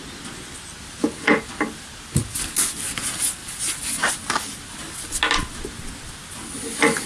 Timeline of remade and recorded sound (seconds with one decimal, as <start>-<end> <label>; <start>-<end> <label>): 0.0-7.1 recorded